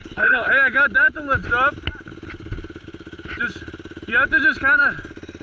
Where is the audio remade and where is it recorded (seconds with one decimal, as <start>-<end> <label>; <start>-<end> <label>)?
0.0-0.5 remade; 0.5-5.4 recorded